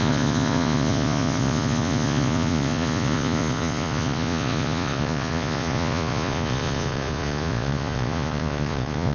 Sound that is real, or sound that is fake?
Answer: fake